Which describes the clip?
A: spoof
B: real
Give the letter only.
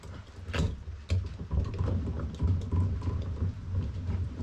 B